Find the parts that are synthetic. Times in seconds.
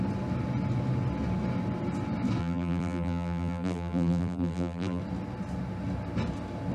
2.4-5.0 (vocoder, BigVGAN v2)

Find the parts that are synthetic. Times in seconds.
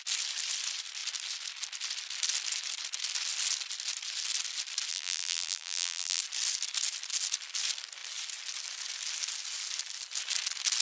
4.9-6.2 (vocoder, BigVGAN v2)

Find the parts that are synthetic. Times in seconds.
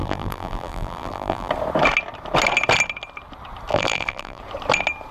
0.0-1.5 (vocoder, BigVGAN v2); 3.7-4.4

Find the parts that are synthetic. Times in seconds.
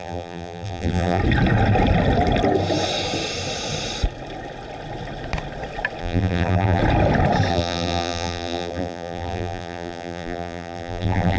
0.0-1.2 (vocoder, BigVGAN v2); 6.0-6.8; 7.5-11.4